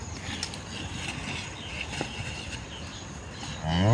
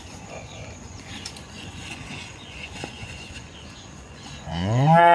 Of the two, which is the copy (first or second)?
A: second